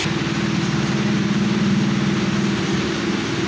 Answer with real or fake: real